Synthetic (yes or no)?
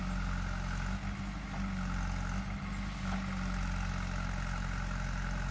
no